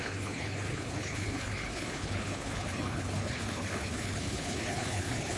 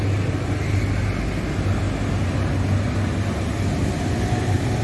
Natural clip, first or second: second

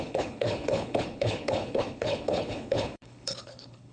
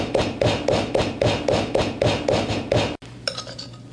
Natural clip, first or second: second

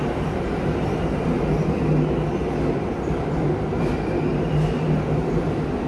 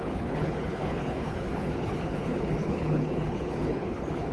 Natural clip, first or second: first